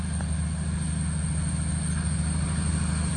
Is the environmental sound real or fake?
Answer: real